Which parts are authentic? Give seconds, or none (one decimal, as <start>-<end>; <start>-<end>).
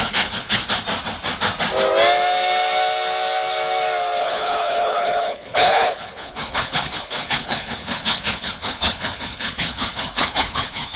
0.6-4.2